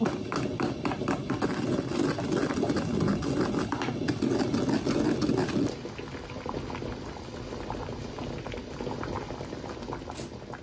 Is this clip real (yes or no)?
yes